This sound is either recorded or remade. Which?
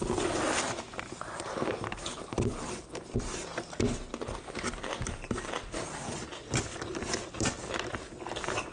recorded